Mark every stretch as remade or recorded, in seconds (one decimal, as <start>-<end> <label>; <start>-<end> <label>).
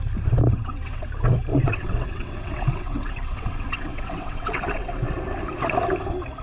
0.0-0.5 recorded; 0.5-1.1 remade; 1.1-1.5 recorded; 1.5-5.2 remade; 5.2-6.4 recorded